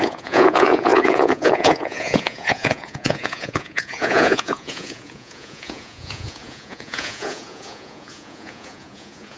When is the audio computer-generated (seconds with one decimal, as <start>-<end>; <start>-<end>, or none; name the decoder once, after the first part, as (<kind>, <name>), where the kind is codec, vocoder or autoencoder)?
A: 0.0-9.4 (vocoder, Vocos)